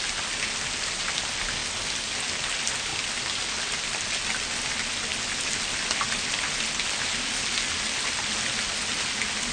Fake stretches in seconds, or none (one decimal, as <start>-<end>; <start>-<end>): none